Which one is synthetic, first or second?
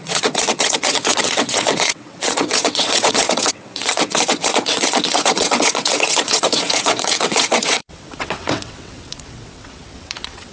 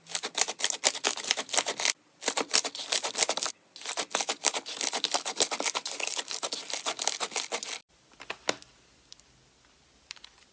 first